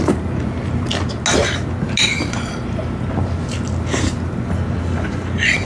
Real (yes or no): yes